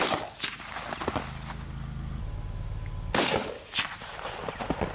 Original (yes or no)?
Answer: yes